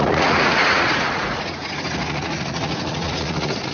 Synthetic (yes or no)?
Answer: yes